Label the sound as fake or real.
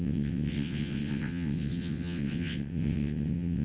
fake